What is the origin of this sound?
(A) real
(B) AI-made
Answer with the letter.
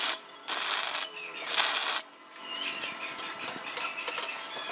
A